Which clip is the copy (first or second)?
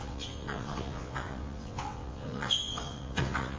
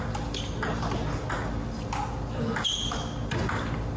first